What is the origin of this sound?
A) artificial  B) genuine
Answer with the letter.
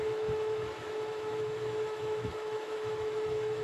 A